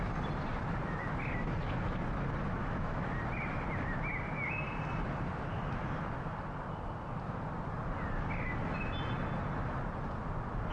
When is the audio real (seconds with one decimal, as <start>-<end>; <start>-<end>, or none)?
0.0-2.6; 3.1-10.7